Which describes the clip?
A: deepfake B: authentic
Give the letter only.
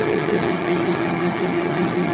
A